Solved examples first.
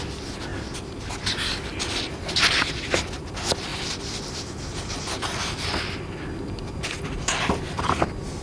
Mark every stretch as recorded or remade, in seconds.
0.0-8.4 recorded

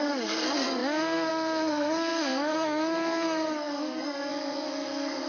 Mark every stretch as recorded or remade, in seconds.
0.0-5.3 remade

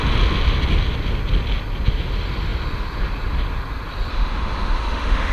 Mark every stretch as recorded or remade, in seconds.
0.0-4.1 recorded; 4.1-5.3 remade